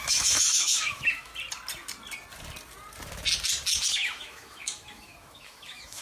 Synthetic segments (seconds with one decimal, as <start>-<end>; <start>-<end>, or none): 0.0-1.3; 3.9-6.0